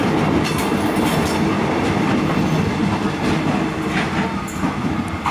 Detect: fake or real real